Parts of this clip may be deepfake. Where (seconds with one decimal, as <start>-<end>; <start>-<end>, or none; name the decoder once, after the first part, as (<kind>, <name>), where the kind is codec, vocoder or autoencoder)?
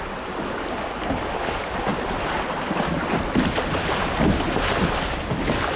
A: none